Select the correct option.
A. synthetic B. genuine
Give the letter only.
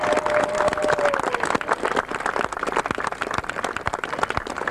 B